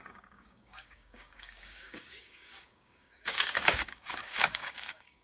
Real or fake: fake